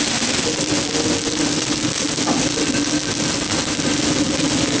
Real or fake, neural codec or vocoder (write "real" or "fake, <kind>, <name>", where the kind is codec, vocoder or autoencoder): real